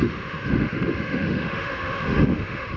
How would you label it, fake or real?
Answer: fake